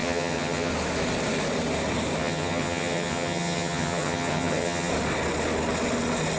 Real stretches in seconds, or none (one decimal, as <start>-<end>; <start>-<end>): 0.7-2.2; 4.9-6.4

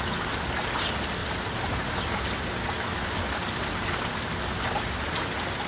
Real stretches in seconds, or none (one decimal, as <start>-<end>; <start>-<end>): 0.0-5.7

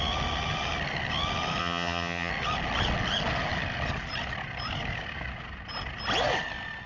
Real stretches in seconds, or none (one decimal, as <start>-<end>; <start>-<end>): 0.0-1.6; 2.3-6.9

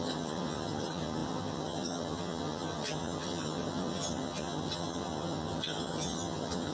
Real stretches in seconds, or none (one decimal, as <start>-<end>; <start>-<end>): none

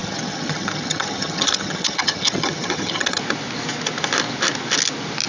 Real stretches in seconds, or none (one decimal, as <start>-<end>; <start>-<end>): 3.2-5.3

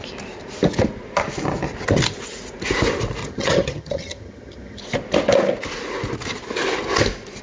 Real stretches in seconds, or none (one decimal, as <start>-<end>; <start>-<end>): 0.0-3.2; 4.8-7.4